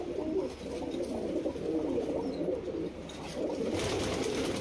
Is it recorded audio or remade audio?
recorded